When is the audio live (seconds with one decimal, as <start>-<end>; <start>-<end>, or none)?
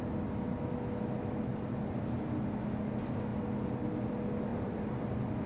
0.0-4.5